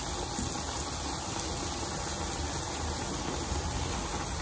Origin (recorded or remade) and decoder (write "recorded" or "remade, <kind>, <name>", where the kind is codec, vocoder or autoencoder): recorded